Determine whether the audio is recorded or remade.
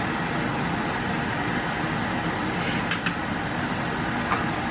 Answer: recorded